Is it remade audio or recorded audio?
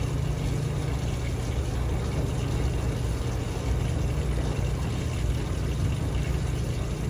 recorded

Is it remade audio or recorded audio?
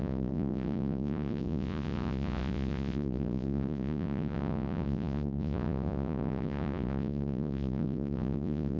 remade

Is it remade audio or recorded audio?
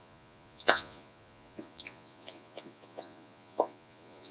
remade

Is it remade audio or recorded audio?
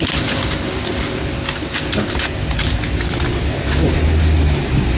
recorded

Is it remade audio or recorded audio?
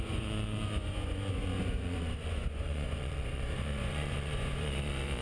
remade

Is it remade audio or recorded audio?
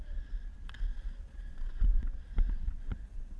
remade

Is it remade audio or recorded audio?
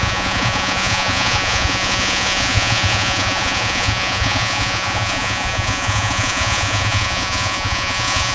remade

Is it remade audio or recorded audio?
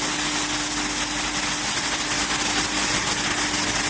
recorded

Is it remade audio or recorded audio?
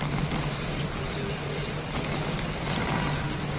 recorded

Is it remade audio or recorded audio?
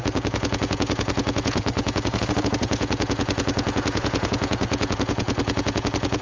remade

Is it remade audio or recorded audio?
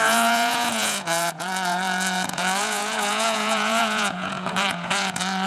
remade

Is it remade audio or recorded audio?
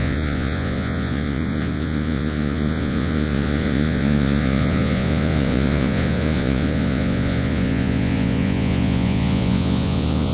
remade